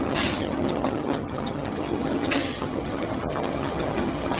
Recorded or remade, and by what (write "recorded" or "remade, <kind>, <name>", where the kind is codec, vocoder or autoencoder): remade, vocoder, HiFi-GAN